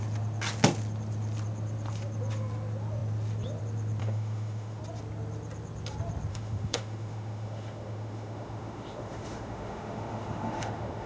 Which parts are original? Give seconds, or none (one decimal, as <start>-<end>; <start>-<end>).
0.0-4.0; 4.8-6.3